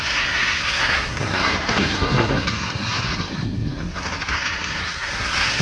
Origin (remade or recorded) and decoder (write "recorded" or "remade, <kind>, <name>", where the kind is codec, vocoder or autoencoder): remade, codec, SNAC